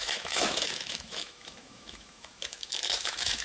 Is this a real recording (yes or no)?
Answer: no